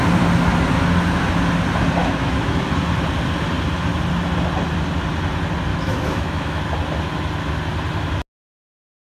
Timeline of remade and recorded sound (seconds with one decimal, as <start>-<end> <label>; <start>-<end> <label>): 0.0-2.0 recorded; 2.0-2.7 remade; 2.7-5.7 recorded; 5.7-6.6 remade; 6.6-9.1 recorded